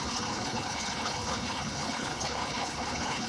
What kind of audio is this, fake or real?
fake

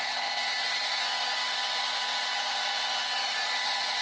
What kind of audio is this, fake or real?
real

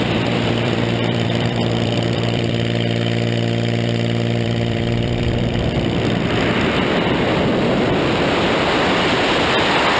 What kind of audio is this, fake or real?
fake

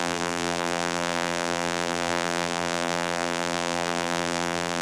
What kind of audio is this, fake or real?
fake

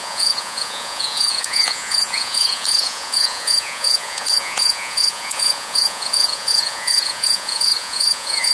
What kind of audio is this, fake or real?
fake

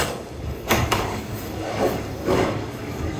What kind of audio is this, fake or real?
fake